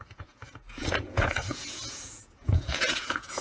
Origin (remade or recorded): remade